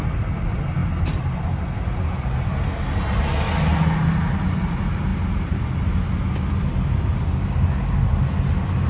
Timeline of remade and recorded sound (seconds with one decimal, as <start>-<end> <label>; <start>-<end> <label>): 0.0-8.9 recorded

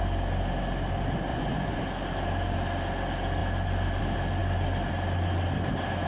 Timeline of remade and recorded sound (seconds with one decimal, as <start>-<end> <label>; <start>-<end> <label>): 0.0-1.3 recorded; 1.3-1.8 remade; 1.8-6.1 recorded

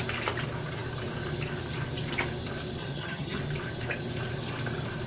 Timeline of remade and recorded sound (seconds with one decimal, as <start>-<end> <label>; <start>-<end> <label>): 0.0-2.8 recorded; 2.8-3.4 remade; 3.4-5.1 recorded

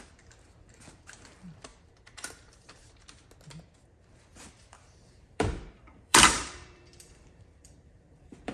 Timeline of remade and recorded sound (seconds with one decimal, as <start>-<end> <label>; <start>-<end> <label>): 0.0-1.7 recorded; 1.7-2.9 remade; 2.9-4.3 recorded; 4.3-8.5 remade

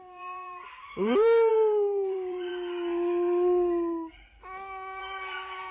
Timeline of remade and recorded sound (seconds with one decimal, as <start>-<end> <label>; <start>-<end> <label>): 0.0-2.5 remade; 2.5-5.0 recorded; 5.0-5.7 remade